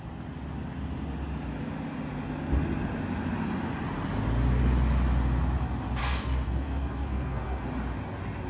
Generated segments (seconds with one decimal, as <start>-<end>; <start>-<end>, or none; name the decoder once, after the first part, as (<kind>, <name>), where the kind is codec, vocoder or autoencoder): 6.0-7.7 (codec, SNAC)